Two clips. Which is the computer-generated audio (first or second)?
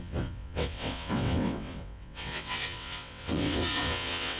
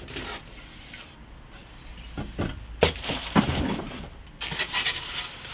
first